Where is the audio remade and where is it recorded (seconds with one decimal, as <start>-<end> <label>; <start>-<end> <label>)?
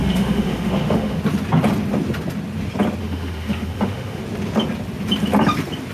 0.0-1.2 remade; 1.2-3.0 recorded; 3.0-4.2 remade; 4.2-5.9 recorded